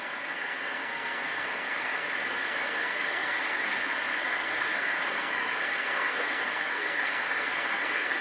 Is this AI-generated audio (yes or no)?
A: yes